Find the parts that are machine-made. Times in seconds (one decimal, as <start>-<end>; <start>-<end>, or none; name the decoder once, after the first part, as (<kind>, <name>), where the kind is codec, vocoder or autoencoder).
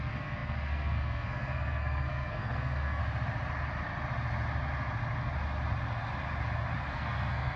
0.0-3.0 (codec, SNAC); 6.9-7.6